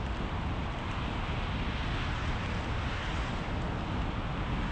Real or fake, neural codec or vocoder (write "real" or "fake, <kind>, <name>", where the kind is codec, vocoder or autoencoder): real